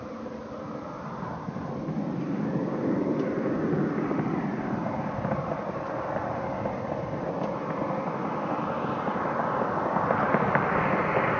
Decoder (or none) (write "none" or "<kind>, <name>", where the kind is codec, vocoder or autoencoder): none